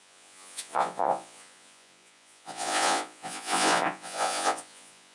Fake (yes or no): yes